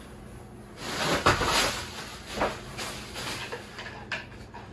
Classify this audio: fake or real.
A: real